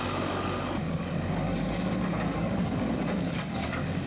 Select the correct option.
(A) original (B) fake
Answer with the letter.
B